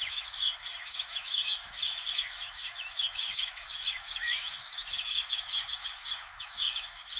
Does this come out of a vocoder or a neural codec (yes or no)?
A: yes